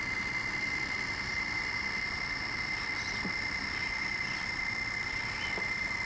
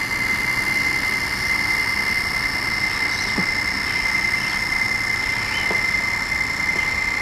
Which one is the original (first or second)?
second